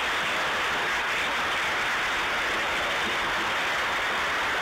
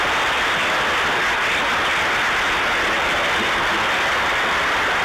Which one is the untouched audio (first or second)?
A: second